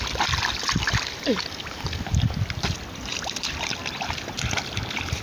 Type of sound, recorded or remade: remade